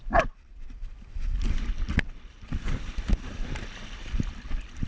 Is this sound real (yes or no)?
yes